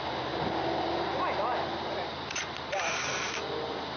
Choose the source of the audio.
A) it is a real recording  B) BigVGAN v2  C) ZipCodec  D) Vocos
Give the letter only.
A